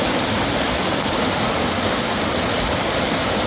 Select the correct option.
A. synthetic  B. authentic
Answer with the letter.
B